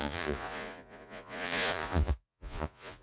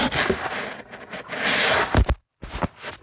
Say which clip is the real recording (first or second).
second